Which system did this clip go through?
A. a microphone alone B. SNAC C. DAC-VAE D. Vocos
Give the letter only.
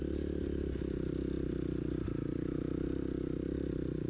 A